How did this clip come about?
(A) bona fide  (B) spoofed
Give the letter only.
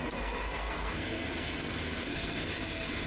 B